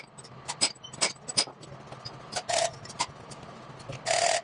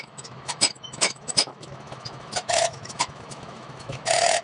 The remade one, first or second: second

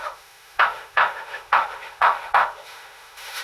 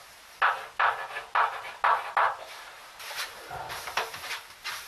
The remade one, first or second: first